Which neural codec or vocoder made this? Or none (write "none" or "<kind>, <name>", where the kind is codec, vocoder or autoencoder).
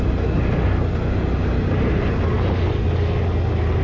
none